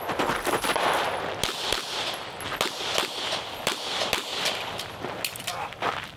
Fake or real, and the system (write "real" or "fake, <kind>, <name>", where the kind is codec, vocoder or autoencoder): real